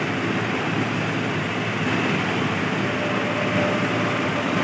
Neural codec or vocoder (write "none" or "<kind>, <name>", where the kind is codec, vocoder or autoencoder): none